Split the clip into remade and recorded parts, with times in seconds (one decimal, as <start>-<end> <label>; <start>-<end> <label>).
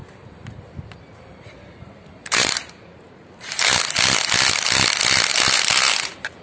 0.0-3.8 remade; 3.8-5.3 recorded; 5.3-6.4 remade